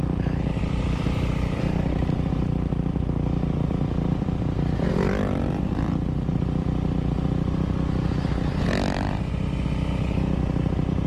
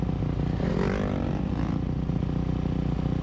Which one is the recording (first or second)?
second